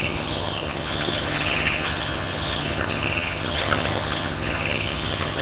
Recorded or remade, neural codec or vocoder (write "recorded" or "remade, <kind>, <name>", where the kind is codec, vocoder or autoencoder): remade, vocoder, HiFi-GAN